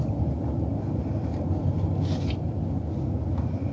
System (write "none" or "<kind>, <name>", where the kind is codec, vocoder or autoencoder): none